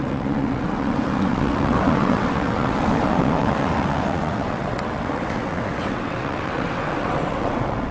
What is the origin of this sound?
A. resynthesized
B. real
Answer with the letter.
A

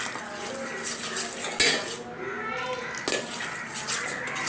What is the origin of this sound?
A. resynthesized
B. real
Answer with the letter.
B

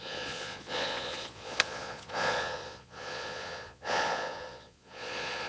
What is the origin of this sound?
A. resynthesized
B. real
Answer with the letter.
A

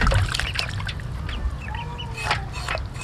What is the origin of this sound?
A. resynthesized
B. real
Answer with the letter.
B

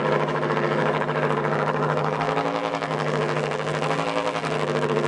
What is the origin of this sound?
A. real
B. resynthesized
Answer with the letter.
B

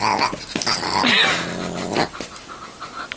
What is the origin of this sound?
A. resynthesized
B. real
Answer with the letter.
B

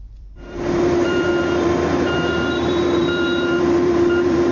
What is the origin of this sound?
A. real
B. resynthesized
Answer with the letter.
B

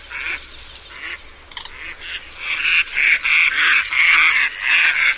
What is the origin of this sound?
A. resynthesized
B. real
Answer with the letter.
B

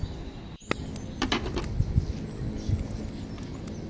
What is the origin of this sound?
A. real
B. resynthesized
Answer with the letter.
A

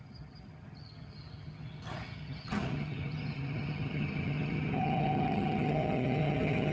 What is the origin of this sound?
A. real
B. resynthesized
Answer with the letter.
B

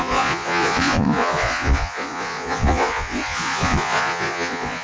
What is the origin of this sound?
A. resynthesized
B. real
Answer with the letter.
A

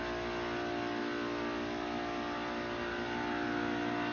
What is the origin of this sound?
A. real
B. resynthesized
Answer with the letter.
A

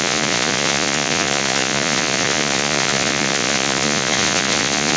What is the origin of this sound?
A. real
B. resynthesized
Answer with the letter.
B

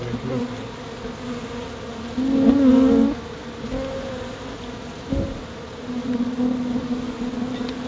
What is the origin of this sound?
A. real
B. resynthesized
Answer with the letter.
A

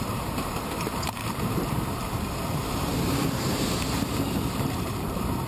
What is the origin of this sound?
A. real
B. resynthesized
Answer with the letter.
B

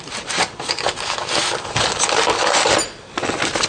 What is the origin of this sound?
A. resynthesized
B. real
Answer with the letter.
B